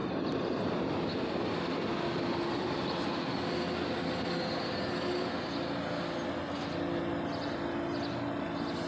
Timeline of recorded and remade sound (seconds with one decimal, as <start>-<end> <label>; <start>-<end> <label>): 0.0-8.9 recorded